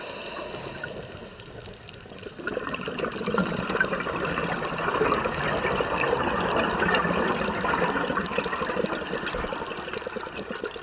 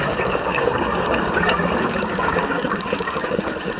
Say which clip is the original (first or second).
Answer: first